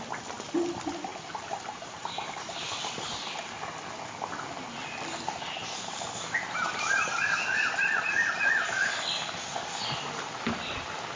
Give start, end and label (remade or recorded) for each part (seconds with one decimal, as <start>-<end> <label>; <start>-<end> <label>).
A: 0.0-1.1 recorded; 1.1-3.6 remade; 3.6-5.6 recorded; 5.6-7.9 remade; 7.9-11.2 recorded